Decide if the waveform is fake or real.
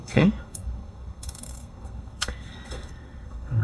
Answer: fake